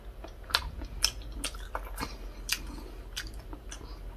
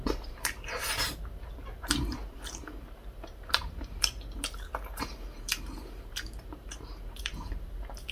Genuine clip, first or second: first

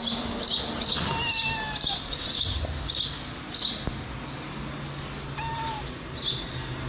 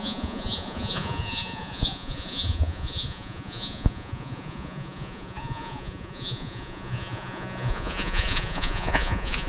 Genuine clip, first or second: first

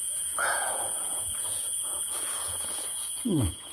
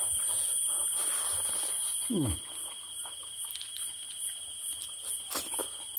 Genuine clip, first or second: second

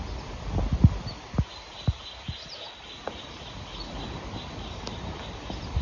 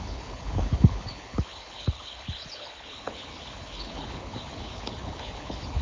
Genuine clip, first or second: first